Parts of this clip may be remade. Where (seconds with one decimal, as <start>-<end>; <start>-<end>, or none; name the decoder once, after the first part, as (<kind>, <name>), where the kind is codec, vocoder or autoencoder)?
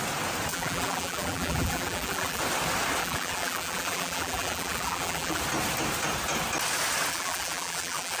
0.5-2.4 (vocoder, BigVGAN v2); 3.0-5.4; 7.1-8.2